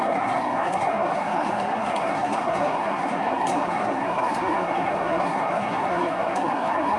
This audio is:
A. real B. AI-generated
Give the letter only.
B